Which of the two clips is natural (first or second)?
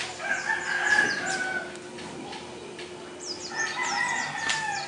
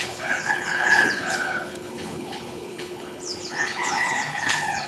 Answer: first